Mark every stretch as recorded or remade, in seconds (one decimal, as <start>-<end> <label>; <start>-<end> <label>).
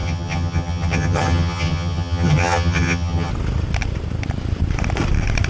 0.0-3.3 remade; 3.3-5.5 recorded